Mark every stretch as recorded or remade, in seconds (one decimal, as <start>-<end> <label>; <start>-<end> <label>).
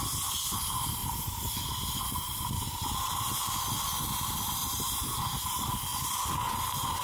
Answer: 0.0-1.0 recorded; 1.0-1.5 remade; 1.5-4.6 recorded; 4.6-5.4 remade; 5.4-7.0 recorded